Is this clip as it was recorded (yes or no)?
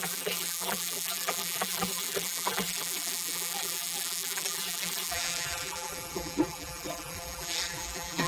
no